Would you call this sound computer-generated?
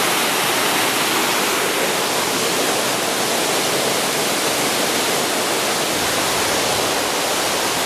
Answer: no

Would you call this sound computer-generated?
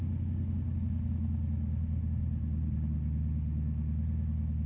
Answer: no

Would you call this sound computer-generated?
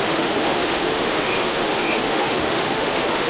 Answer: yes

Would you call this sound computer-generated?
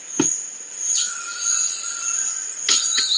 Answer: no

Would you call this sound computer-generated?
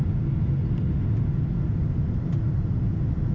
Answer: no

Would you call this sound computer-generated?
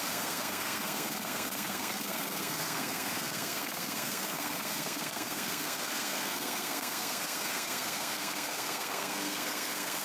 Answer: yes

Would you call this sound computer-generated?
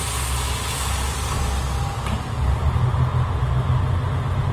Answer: no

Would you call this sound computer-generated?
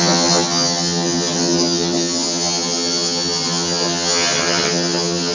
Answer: yes